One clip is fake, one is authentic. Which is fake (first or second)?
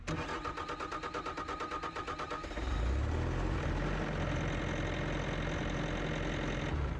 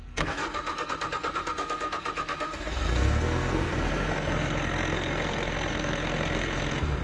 second